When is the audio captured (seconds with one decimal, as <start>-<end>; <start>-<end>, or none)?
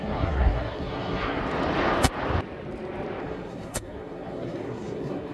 1.4-3.2